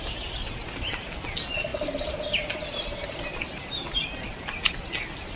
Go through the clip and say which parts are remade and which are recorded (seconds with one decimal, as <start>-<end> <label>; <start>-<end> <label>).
0.0-0.9 remade; 0.9-1.7 recorded; 1.7-4.9 remade; 4.9-5.4 recorded